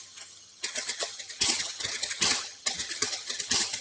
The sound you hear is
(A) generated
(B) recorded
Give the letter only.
A